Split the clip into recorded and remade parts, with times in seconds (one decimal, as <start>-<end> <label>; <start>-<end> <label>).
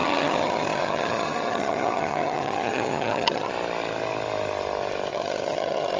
0.0-3.5 remade; 3.5-5.1 recorded; 5.1-6.0 remade